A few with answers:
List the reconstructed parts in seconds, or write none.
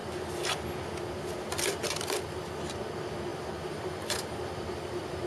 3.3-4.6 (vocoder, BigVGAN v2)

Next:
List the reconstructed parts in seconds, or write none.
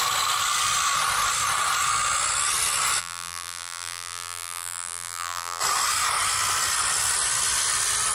3.0-5.6 (vocoder, BigVGAN v2)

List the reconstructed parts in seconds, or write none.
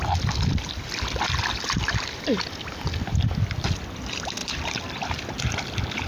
4.4-4.9 (vocoder, BigVGAN v2)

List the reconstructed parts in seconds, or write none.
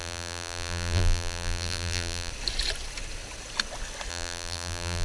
0.0-2.3 (vocoder, BigVGAN v2); 4.1-5.0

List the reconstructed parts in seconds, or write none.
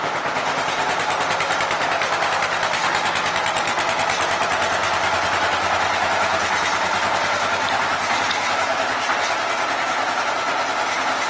none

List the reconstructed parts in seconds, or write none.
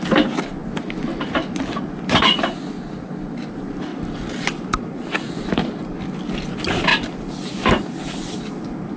3.9-6.0 (vocoder, BigVGAN v2); 6.9-8.5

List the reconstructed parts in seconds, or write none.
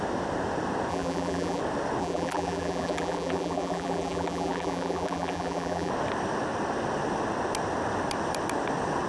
0.9-1.6 (vocoder, BigVGAN v2); 2.0-5.9